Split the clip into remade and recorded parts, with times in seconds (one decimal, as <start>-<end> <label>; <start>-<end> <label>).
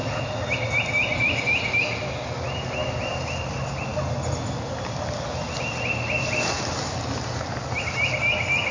0.0-8.7 recorded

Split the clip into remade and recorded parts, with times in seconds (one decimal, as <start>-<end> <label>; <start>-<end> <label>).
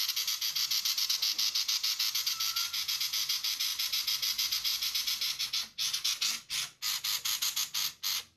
0.0-4.7 recorded; 4.7-5.4 remade; 5.4-8.4 recorded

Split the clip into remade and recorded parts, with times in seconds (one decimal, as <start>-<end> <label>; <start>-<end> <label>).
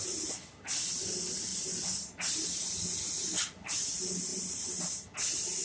0.0-5.6 recorded